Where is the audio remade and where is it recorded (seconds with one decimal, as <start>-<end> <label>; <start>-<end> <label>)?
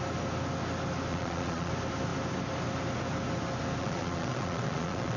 0.0-1.1 recorded; 1.1-1.7 remade; 1.7-3.8 recorded; 3.8-5.2 remade